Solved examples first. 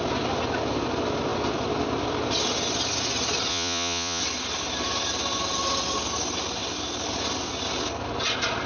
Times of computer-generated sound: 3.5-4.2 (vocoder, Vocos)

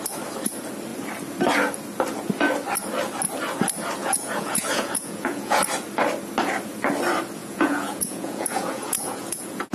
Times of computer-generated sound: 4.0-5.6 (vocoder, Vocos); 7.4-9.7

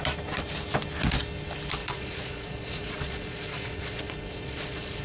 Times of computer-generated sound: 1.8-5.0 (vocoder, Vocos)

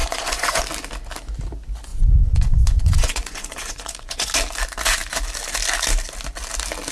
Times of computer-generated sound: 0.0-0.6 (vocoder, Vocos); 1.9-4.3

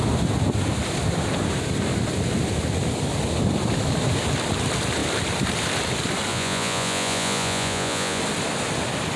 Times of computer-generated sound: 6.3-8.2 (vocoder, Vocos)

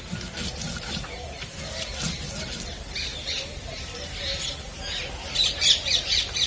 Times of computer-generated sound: none